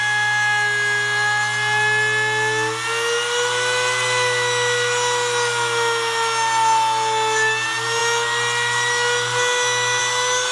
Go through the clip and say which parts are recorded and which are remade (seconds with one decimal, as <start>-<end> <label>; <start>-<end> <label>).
0.0-10.5 recorded